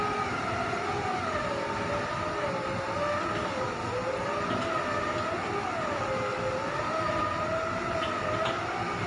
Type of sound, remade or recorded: recorded